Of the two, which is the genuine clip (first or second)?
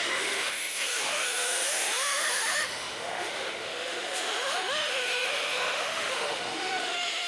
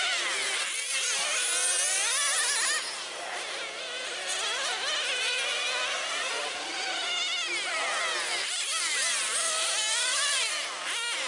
second